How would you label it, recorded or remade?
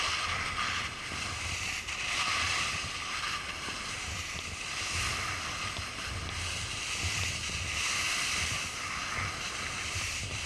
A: recorded